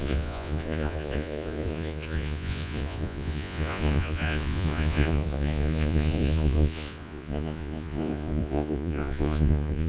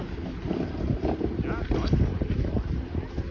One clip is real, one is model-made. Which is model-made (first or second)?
first